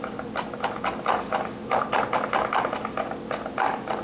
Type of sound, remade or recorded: recorded